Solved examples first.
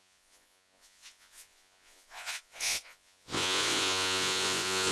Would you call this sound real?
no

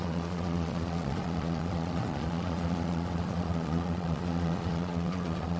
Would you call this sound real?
no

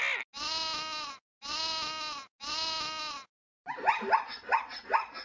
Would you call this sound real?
yes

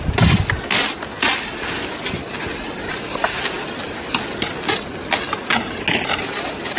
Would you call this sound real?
yes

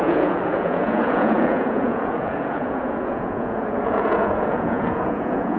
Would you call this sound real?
no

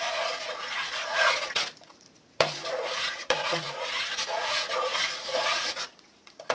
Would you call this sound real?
no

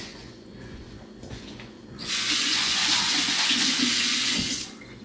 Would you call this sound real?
no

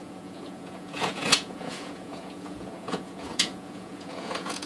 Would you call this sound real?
no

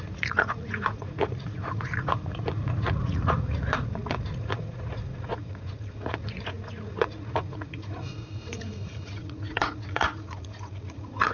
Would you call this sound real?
no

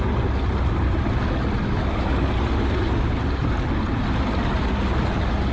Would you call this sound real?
yes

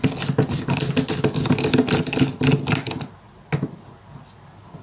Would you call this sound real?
yes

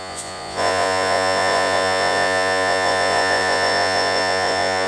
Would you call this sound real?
no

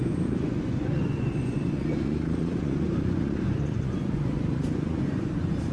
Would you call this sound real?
no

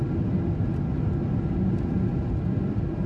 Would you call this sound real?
yes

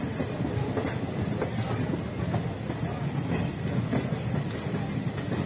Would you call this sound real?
yes